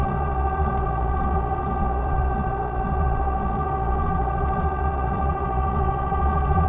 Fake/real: fake